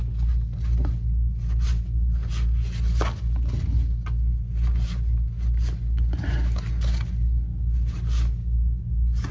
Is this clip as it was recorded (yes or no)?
yes